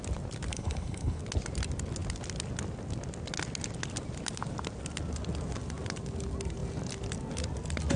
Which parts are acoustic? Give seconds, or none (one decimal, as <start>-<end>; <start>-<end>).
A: 0.0-0.5; 1.2-8.0